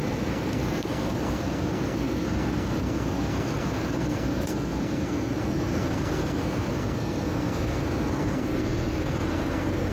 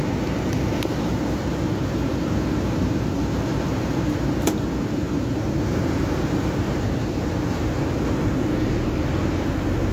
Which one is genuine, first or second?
second